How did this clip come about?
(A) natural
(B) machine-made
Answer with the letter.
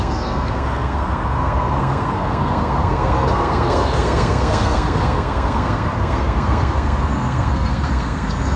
B